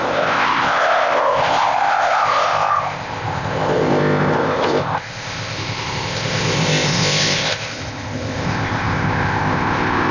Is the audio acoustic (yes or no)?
no